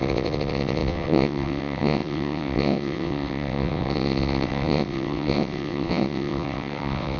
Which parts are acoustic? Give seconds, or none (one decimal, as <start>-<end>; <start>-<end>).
none